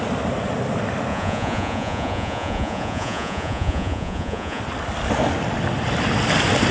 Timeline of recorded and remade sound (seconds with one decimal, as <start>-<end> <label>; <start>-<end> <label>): 0.0-1.1 recorded; 1.1-4.6 remade; 4.6-6.7 recorded